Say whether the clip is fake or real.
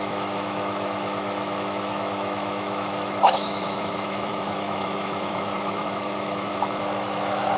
fake